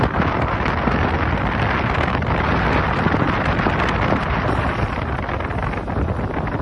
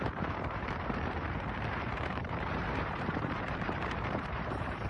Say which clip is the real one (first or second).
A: first